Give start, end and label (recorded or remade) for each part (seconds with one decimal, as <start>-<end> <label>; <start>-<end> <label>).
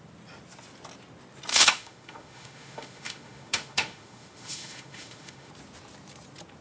0.0-1.5 recorded; 1.5-5.5 remade; 5.5-6.6 recorded